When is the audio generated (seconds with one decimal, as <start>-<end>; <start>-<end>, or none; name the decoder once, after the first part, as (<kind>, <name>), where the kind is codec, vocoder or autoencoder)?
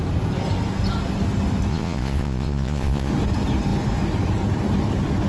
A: 1.7-3.1 (vocoder, Vocos)